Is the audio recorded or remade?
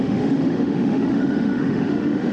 remade